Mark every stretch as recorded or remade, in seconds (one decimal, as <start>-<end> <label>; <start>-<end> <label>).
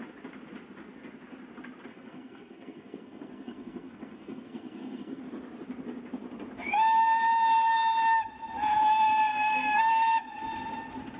0.0-1.9 recorded; 1.9-5.2 remade; 5.2-9.3 recorded; 9.3-9.9 remade; 9.9-11.2 recorded